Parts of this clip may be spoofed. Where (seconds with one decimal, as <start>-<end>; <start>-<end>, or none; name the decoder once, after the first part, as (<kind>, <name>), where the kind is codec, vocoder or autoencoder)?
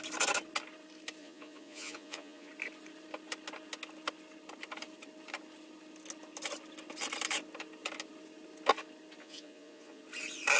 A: 1.2-2.5 (vocoder, Vocos); 9.2-10.0